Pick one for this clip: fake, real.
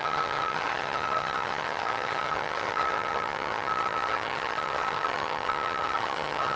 fake